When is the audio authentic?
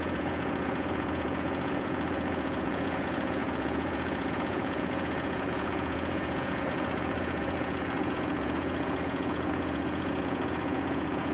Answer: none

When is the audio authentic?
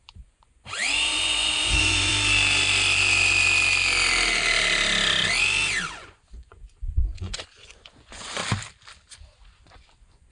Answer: 2.1-5.9; 8.4-9.2